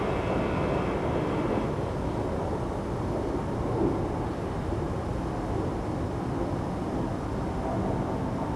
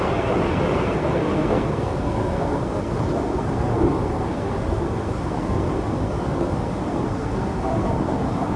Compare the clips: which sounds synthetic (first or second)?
second